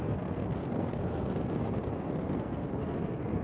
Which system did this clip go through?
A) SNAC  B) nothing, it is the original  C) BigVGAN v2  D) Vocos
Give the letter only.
A